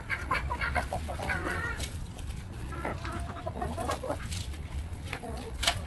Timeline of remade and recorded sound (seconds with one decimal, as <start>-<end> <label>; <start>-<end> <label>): 0.0-2.9 remade; 2.9-3.4 recorded; 3.4-5.9 remade

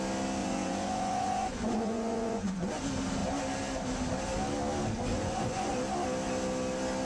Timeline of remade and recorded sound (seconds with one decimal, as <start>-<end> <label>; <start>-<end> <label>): 0.0-0.4 recorded; 0.4-2.8 remade; 2.8-5.1 recorded; 5.1-5.7 remade; 5.7-7.0 recorded

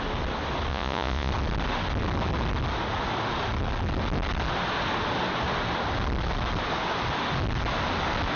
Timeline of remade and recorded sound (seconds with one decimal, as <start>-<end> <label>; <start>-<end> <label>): 0.0-0.7 recorded; 0.7-1.3 remade; 1.3-8.4 recorded